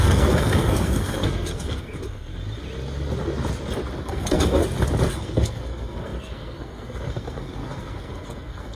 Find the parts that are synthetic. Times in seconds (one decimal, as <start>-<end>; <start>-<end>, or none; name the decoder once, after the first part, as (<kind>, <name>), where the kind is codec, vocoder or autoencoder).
0.0-2.3 (codec, SNAC); 4.0-4.6; 5.1-8.8